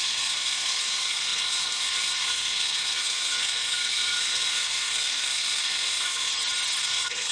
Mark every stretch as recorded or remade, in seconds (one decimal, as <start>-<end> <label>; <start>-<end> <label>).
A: 0.0-6.3 remade; 6.3-6.8 recorded; 6.8-7.3 remade